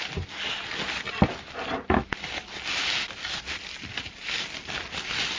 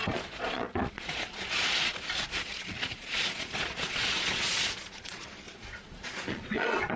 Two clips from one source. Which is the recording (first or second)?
first